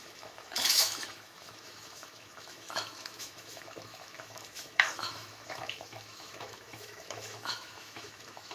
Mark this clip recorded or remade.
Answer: remade